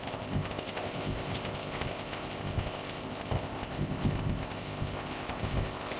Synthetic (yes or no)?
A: yes